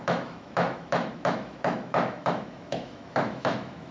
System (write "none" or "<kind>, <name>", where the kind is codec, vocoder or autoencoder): autoencoder, DAC-VAE